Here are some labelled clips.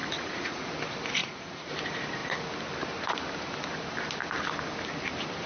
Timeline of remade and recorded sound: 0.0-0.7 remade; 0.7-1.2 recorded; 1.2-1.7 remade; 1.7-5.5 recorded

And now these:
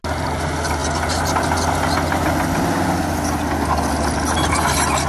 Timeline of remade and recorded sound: 0.0-5.1 recorded

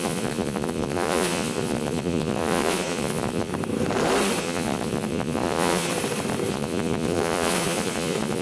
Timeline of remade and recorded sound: 0.0-3.5 remade; 3.5-4.4 recorded; 4.4-5.9 remade; 5.9-6.5 recorded; 6.5-8.4 remade